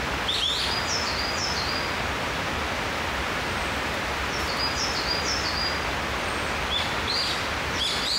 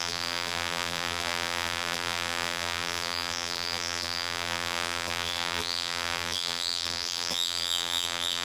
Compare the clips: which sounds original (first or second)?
first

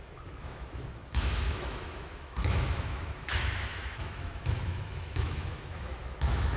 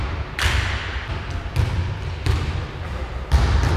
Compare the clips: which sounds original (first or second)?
second